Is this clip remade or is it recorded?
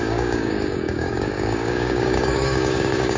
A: remade